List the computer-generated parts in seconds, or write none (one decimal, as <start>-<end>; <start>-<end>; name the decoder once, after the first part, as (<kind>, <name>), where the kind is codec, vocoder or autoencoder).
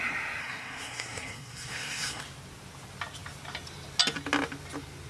0.4-2.2 (codec, SNAC)